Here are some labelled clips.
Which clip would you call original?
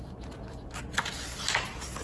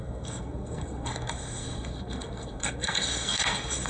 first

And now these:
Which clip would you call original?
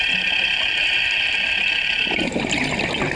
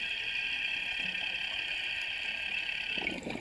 first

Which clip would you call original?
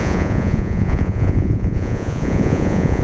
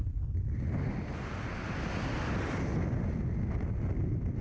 second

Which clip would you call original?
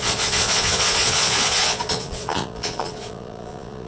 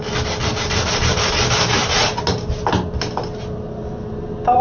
second